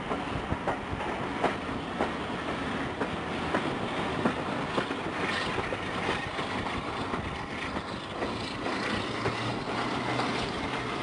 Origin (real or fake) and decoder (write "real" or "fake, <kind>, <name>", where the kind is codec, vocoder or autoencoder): real